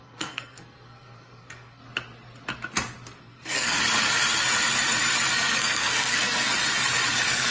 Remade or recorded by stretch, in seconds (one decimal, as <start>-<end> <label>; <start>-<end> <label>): 0.0-1.8 remade; 1.8-3.2 recorded; 3.2-3.8 remade; 3.8-5.3 recorded; 5.3-6.5 remade; 6.5-7.1 recorded; 7.1-7.5 remade